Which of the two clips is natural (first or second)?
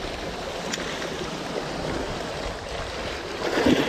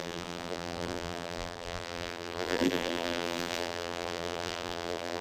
first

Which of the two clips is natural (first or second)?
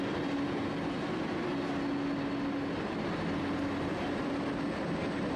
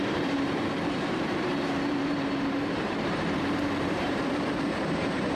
first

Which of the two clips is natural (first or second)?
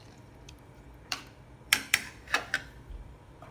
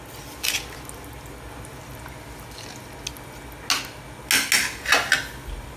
second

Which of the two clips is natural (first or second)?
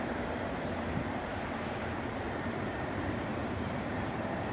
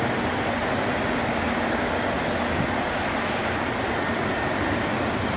second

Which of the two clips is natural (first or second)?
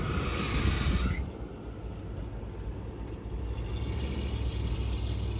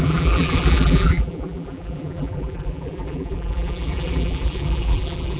first